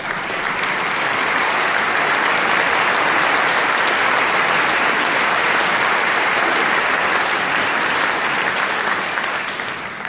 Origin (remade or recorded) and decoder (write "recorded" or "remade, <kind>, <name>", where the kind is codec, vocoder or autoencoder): remade, vocoder, BigVGAN v2